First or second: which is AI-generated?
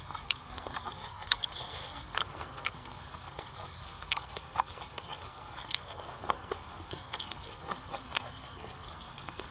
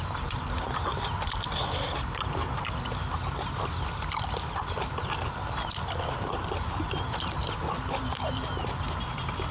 first